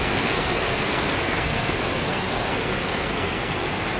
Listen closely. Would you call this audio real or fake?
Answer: fake